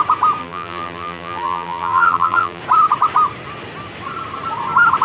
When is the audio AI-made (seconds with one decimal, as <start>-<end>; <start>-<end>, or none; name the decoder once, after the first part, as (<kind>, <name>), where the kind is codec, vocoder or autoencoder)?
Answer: 0.4-2.6 (vocoder, BigVGAN v2)